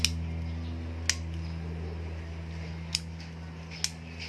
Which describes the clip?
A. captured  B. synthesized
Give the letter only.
A